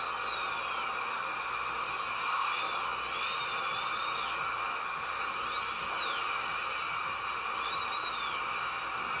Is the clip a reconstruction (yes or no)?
no